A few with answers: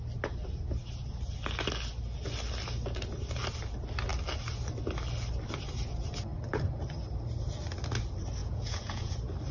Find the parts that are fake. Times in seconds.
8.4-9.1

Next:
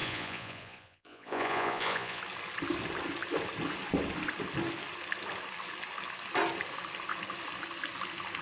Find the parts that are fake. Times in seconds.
0.0-2.2

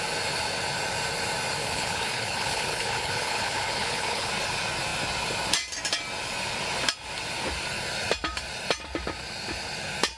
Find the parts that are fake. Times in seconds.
1.6-4.3

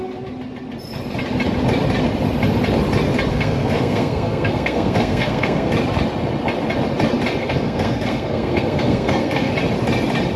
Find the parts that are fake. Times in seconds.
3.3-5.7; 7.4-9.5